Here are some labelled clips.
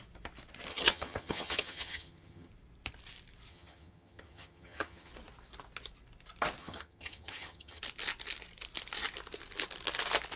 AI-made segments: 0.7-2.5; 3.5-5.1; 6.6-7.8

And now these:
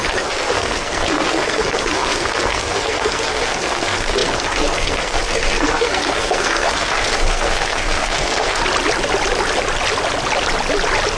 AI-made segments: 0.0-8.6

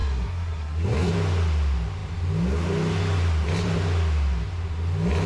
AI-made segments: 0.0-1.1

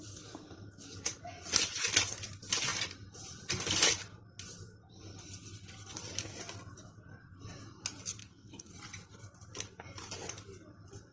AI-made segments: 8.2-8.7

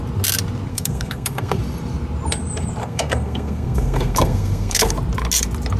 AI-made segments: 0.7-1.6; 2.8-4.9

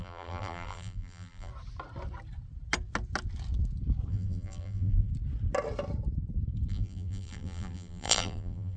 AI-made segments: 0.0-1.5; 4.1-5.1; 6.7-8.8

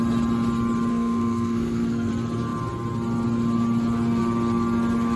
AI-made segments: 0.9-2.1